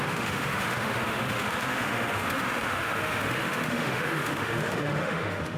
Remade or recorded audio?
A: remade